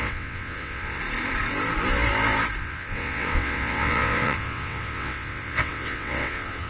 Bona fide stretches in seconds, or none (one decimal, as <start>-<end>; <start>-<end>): 1.0-2.6